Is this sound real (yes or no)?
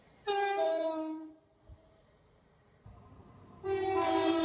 no